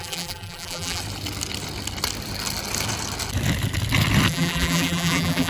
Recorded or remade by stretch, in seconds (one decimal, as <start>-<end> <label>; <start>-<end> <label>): 0.0-1.0 remade; 1.0-4.3 recorded; 4.3-5.5 remade